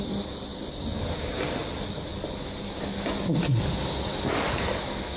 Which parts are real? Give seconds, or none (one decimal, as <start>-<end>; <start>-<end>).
0.5-1.1; 2.1-5.2